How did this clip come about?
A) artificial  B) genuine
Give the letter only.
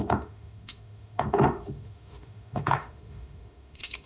A